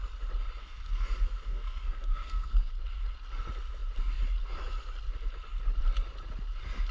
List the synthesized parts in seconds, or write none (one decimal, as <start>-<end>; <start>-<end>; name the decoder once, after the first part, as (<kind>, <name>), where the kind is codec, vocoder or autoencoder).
0.6-2.7 (codec, SNAC)